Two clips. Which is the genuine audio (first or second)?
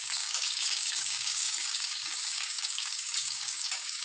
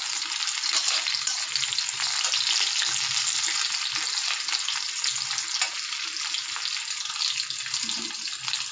second